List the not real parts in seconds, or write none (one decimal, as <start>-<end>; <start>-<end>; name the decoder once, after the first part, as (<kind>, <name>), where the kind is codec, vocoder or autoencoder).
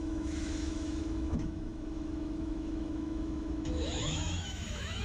0.0-5.0 (autoencoder, DAC-VAE)